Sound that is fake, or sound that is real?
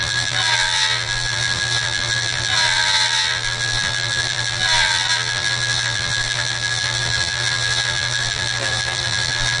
fake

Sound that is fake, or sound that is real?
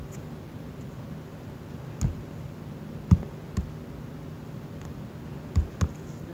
real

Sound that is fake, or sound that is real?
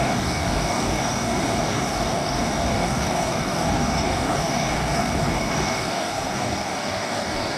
fake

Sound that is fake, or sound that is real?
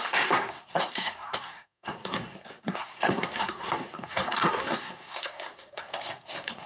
fake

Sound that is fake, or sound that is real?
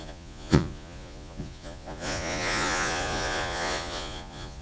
fake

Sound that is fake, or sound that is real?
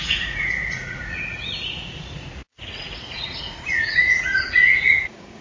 fake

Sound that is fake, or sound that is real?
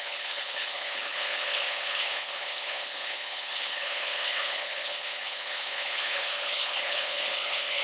fake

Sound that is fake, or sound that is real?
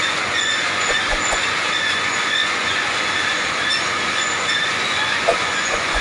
fake